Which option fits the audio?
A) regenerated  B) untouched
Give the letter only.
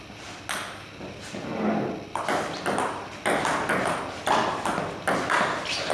B